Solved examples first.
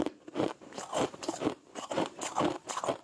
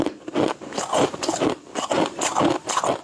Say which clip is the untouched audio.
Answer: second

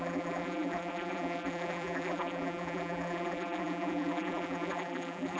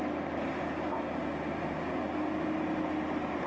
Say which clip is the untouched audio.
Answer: second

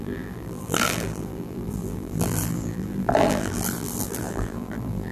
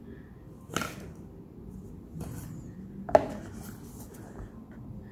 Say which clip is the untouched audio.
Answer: second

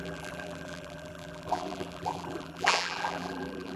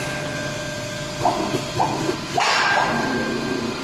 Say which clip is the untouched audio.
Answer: second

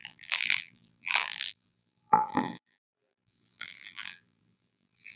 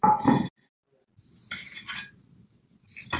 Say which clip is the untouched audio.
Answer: second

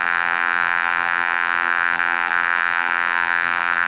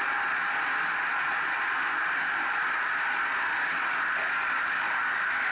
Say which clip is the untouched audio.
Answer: second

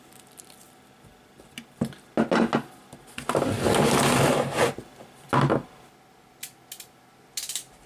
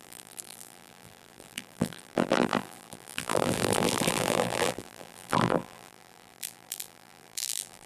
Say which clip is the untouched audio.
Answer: first